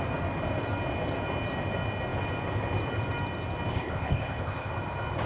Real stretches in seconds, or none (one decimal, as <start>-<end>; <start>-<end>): 0.0-3.7; 4.7-5.3